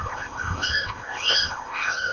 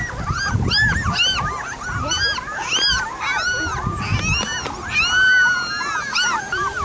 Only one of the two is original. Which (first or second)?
second